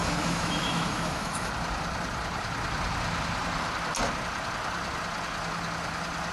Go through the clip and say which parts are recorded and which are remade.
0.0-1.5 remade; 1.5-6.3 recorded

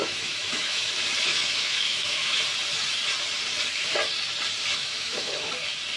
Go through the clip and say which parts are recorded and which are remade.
0.0-0.9 remade; 0.9-1.3 recorded; 1.3-2.4 remade; 2.4-4.8 recorded; 4.8-5.5 remade; 5.5-6.0 recorded

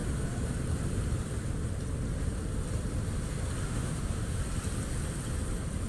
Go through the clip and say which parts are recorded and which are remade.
0.0-3.6 recorded; 3.6-4.4 remade; 4.4-5.9 recorded